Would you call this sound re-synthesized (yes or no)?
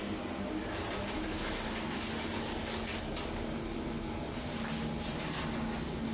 no